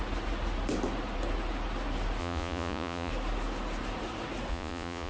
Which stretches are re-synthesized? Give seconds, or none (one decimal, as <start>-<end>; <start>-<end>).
2.2-3.1; 4.5-5.1